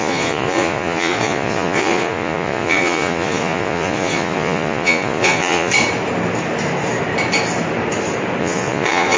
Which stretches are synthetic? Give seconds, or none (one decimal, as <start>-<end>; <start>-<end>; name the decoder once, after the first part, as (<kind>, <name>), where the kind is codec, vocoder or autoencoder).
0.0-5.7 (vocoder, Vocos); 8.4-9.2